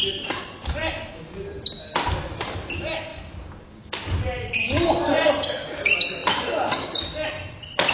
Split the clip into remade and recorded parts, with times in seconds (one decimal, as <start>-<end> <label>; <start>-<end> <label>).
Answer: 0.0-3.1 recorded; 3.1-3.7 remade; 3.7-6.2 recorded; 6.2-7.5 remade; 7.5-7.9 recorded